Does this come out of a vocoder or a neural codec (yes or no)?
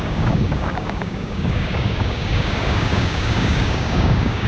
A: yes